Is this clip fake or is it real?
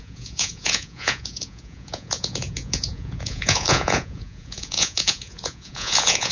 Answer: fake